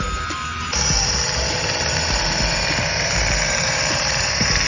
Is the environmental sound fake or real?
fake